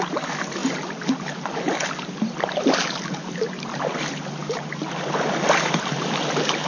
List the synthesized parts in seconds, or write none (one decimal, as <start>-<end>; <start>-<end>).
none